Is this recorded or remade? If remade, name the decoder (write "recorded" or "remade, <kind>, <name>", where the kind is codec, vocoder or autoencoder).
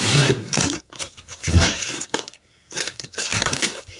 remade, codec, SNAC